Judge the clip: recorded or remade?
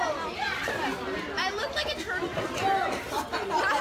recorded